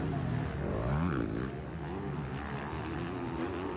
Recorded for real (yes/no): yes